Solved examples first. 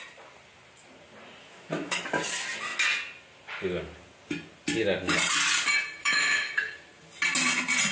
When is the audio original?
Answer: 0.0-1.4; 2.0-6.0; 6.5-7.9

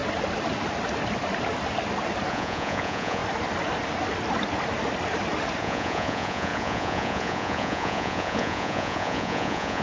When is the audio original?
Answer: 0.0-2.3; 3.2-5.6

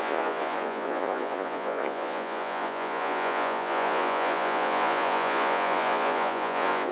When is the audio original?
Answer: none

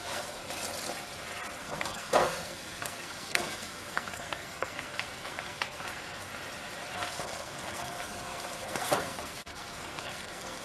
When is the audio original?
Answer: 0.4-1.6; 6.3-6.9

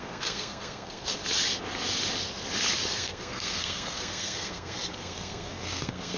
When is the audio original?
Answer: 1.2-2.9

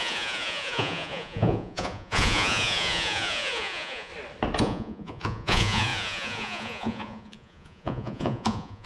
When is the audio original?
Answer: 4.1-4.6

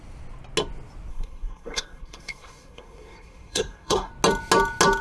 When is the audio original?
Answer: 0.0-1.1; 4.1-5.0

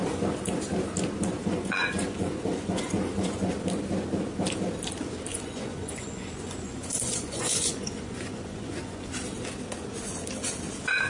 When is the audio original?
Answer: 0.0-1.4; 3.5-5.3; 9.1-11.1